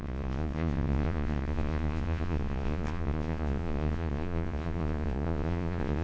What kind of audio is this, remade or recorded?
remade